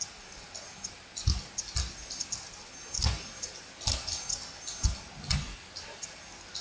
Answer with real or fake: real